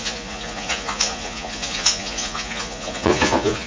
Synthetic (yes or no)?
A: yes